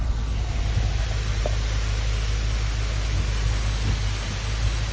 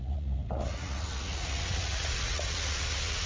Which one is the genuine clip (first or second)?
first